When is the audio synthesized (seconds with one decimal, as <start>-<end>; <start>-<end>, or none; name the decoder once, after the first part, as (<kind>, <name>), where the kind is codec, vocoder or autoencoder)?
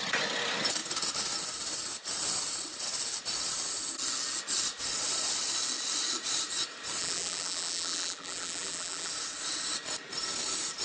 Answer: 7.0-9.1 (vocoder, BigVGAN v2)